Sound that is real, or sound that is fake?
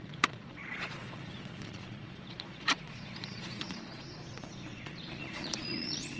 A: fake